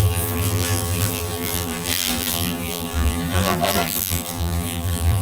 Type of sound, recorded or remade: remade